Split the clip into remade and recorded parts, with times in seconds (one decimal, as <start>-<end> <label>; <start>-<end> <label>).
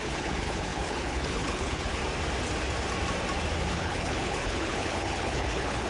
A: 0.0-2.0 remade; 2.0-3.7 recorded; 3.7-5.9 remade